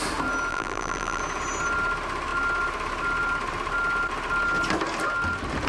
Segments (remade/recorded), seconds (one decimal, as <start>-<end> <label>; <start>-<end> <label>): 0.0-0.5 recorded; 0.5-1.2 remade; 1.2-5.7 recorded